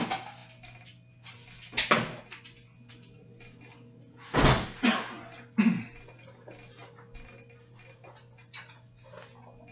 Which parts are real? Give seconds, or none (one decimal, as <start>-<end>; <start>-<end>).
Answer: 0.0-9.7